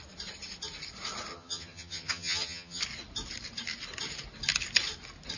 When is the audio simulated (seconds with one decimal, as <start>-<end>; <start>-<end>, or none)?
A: 1.3-2.8